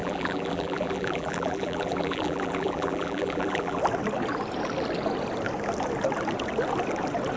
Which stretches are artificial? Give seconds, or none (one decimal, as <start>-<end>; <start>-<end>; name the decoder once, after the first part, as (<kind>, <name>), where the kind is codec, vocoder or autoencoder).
0.0-3.8 (vocoder, BigVGAN v2)